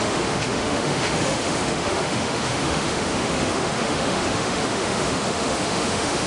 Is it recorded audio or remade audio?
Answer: remade